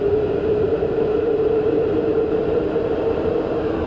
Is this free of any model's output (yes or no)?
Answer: no